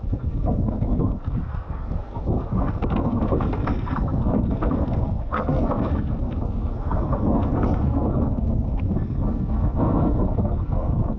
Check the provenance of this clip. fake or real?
fake